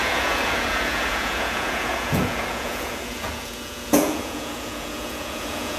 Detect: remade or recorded remade